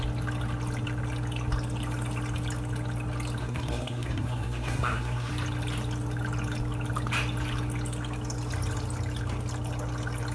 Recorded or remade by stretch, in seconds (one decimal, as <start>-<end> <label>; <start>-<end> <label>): 0.0-3.4 recorded; 3.4-5.3 remade; 5.3-10.3 recorded